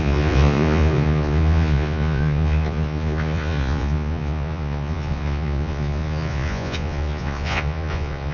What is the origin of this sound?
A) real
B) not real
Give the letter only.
B